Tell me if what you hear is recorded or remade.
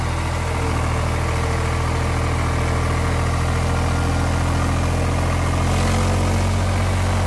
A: recorded